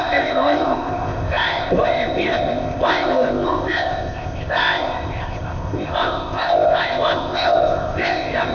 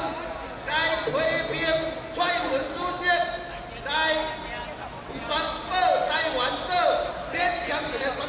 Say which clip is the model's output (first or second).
first